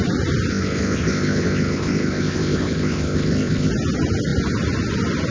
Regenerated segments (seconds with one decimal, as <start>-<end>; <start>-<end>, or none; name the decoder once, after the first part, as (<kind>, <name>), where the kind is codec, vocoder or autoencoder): 0.5-3.7 (codec, ZipCodec)

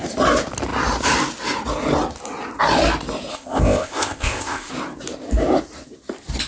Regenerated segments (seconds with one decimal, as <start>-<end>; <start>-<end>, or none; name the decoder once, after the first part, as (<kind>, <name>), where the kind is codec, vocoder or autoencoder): 3.3-4.7 (codec, ZipCodec)

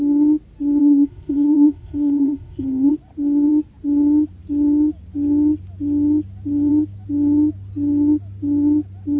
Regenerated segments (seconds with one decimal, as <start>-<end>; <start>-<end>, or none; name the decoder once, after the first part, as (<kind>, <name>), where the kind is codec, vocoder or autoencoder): 0.8-2.9 (codec, ZipCodec)

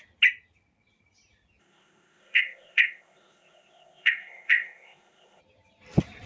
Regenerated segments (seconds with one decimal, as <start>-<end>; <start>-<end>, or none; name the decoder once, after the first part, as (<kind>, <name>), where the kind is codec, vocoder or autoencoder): 1.6-5.4 (codec, ZipCodec)